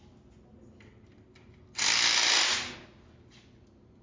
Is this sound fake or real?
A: real